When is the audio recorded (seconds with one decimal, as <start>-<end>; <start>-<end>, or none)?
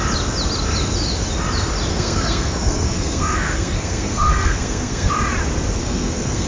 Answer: 0.0-1.9; 5.1-5.8